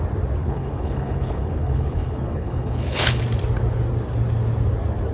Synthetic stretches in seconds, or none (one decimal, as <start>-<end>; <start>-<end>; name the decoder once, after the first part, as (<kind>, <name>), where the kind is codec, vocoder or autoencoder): 0.4-3.2 (codec, HILCodec)